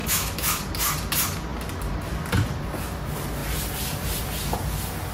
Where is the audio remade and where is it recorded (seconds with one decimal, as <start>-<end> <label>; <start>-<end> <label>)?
0.0-0.6 remade; 0.6-5.1 recorded